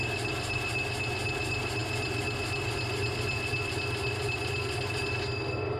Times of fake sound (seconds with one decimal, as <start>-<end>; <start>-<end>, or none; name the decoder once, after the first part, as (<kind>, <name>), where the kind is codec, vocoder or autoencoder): none